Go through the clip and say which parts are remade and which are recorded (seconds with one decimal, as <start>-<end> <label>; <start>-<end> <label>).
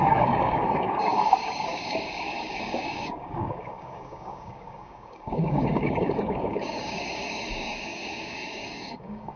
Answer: 0.0-9.4 remade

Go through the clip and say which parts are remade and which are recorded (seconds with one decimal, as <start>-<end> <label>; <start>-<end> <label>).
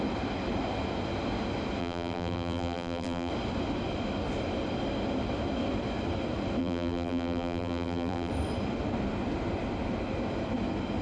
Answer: 0.0-1.8 recorded; 1.8-3.3 remade; 3.3-6.6 recorded; 6.6-8.3 remade; 8.3-11.0 recorded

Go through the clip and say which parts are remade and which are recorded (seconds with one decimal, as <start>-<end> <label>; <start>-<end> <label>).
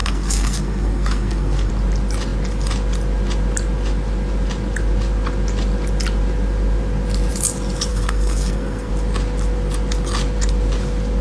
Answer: 0.0-1.7 remade; 1.7-7.9 recorded; 7.9-8.9 remade; 8.9-11.2 recorded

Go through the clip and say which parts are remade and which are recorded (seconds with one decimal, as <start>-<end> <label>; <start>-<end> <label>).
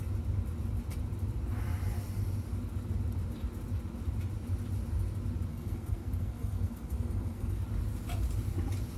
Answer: 0.0-5.5 recorded; 5.5-7.6 remade; 7.6-9.0 recorded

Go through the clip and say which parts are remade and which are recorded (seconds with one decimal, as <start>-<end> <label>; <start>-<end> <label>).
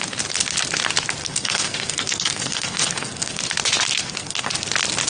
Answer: 0.0-1.2 recorded; 1.2-3.4 remade; 3.4-4.0 recorded; 4.0-4.5 remade; 4.5-5.1 recorded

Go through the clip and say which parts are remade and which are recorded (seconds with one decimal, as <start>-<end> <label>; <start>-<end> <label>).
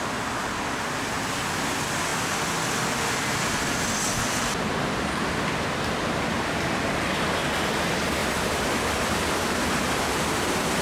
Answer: 0.0-8.2 recorded; 8.2-9.5 remade; 9.5-10.8 recorded